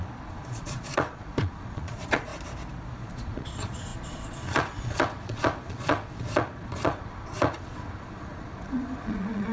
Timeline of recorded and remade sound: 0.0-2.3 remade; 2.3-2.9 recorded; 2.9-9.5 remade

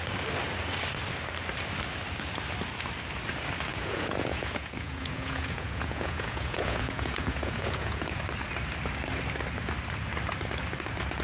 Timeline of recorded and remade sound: 0.0-3.7 recorded; 3.7-8.2 remade; 8.2-11.2 recorded

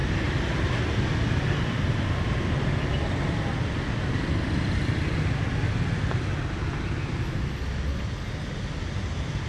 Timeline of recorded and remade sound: 0.0-9.5 recorded

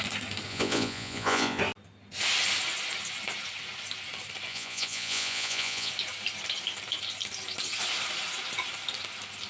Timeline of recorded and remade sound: 0.0-0.5 recorded; 0.5-1.6 remade; 1.6-4.5 recorded; 4.5-5.9 remade; 5.9-9.5 recorded

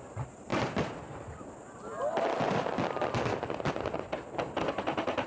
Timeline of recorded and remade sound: 0.0-5.3 recorded